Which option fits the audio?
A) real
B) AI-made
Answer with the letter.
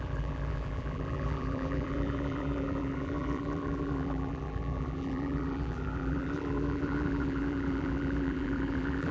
B